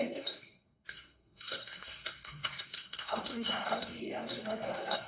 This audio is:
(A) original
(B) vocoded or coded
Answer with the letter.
B